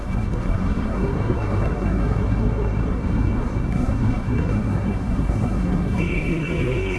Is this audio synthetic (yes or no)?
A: yes